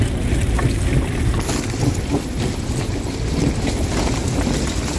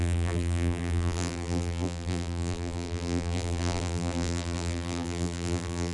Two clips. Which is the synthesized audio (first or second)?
second